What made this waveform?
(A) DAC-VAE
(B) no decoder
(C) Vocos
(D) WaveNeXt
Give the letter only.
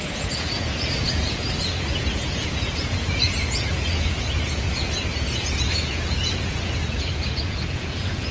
C